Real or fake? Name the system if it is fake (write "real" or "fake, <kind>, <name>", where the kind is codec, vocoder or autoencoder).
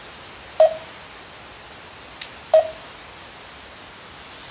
real